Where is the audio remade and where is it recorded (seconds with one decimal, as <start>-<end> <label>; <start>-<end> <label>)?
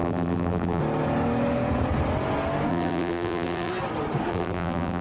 0.0-0.8 remade; 0.8-2.7 recorded; 2.7-3.7 remade; 3.7-4.3 recorded; 4.3-5.0 remade